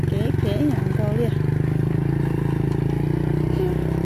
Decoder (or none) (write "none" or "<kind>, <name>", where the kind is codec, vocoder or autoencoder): none